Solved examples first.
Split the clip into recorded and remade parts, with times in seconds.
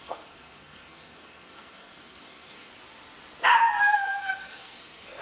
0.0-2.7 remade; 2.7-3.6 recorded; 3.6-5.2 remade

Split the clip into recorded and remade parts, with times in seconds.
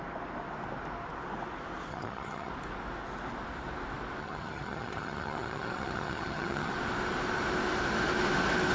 0.0-1.9 recorded; 1.9-2.5 remade; 2.5-4.2 recorded; 4.2-6.7 remade; 6.7-8.7 recorded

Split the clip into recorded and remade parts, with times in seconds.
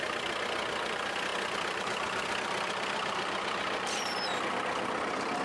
0.0-1.3 recorded; 1.3-4.5 remade; 4.5-5.4 recorded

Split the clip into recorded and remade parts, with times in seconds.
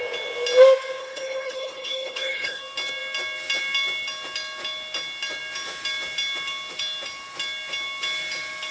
0.0-1.0 recorded; 1.0-2.6 remade; 2.6-8.7 recorded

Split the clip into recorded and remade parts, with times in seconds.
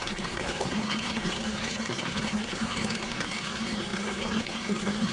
0.0-5.1 remade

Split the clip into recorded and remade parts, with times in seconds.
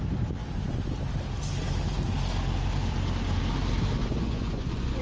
0.0-4.0 recorded; 4.0-5.0 remade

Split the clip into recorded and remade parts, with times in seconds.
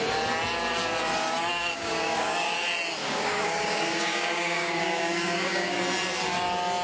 0.0-1.5 recorded; 1.5-2.5 remade; 2.5-3.0 recorded; 3.0-5.8 remade; 5.8-6.8 recorded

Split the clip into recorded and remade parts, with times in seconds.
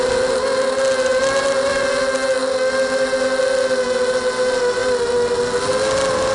0.0-6.3 recorded